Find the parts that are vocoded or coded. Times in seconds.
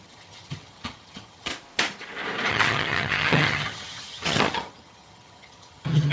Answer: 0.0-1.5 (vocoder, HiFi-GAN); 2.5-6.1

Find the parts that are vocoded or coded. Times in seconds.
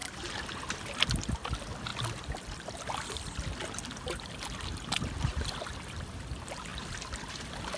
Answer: 0.0-1.3 (vocoder, BigVGAN v2); 6.7-7.3